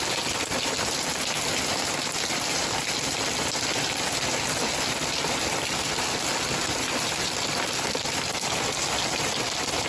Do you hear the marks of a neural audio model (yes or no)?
no